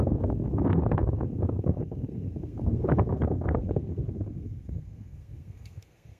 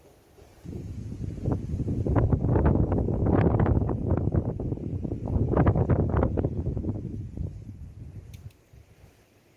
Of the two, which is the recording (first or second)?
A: second